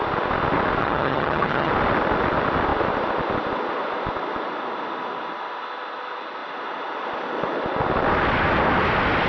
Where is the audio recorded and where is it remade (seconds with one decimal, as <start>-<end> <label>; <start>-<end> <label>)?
0.0-0.8 recorded; 0.8-1.7 remade; 1.7-9.3 recorded